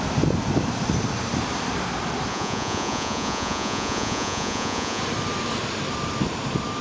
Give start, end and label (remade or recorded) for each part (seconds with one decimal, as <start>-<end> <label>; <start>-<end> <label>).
0.0-2.3 recorded; 2.3-5.0 remade; 5.0-6.8 recorded